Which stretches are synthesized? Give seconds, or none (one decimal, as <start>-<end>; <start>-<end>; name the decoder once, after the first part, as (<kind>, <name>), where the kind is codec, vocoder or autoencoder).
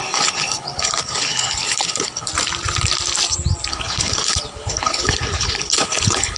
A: 0.0-2.3 (codec, HILCodec); 3.7-6.4